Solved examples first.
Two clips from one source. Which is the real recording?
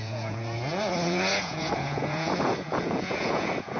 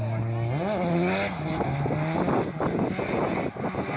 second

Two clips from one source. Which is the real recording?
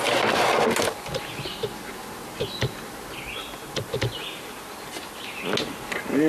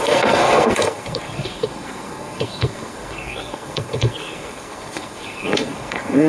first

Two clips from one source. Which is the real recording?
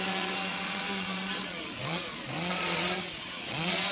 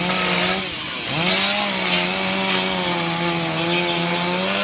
second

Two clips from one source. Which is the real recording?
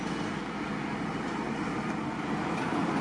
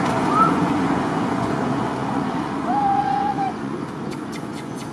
first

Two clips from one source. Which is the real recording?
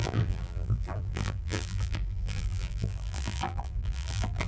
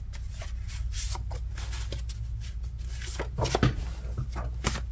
second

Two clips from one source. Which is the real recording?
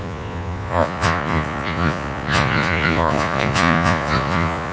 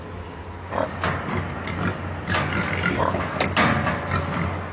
second